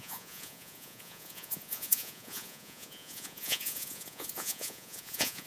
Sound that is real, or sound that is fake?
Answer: fake